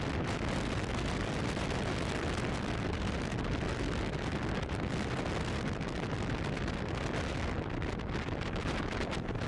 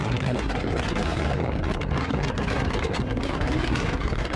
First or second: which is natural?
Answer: first